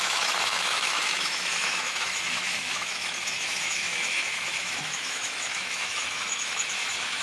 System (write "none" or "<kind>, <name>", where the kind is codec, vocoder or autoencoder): autoencoder, DAC-VAE